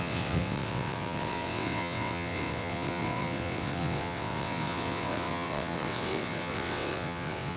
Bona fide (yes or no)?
no